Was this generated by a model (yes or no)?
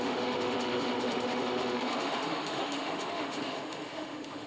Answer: yes